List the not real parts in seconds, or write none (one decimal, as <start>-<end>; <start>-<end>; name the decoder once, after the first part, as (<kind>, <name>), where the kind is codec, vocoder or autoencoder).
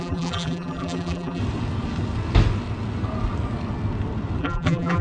0.0-1.4 (vocoder, BigVGAN v2); 4.4-5.0